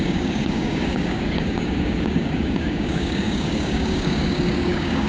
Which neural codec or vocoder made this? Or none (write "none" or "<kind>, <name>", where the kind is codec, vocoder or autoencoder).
codec, DAC